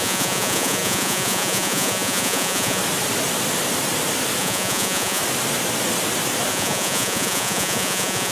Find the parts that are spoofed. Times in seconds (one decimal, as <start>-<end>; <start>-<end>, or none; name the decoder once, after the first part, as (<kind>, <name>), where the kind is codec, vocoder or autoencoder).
0.0-2.8 (vocoder, Vocos); 4.4-5.2; 6.5-8.3